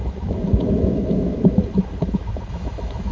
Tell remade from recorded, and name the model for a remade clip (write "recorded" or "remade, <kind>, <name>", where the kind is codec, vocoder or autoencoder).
remade, autoencoder, DAC-VAE